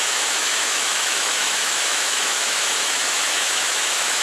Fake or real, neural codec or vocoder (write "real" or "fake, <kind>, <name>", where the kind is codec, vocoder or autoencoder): fake, autoencoder, DAC-VAE